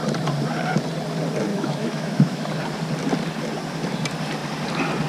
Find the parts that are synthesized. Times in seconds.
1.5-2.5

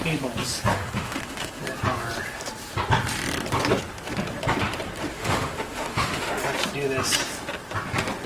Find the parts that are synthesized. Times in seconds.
0.7-1.6; 5.1-6.4

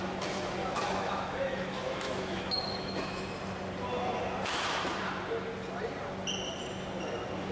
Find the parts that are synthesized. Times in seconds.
0.6-3.2